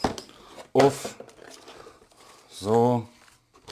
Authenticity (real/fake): real